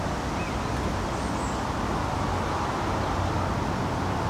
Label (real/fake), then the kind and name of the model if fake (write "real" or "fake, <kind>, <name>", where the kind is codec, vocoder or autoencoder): real